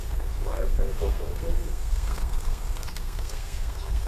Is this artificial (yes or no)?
yes